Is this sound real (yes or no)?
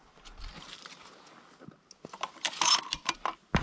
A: yes